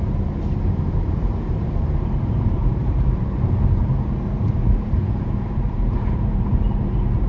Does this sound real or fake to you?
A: fake